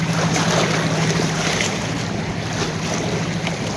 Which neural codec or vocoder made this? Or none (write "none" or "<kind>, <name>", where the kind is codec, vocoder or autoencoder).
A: none